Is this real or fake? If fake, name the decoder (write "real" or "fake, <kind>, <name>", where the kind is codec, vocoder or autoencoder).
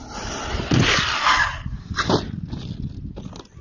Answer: real